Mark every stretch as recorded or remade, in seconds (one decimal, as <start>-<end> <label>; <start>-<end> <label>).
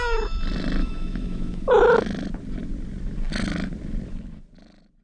0.0-0.8 recorded; 0.8-1.8 remade; 1.8-5.0 recorded